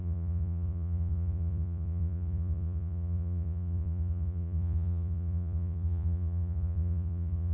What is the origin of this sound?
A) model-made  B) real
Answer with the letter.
A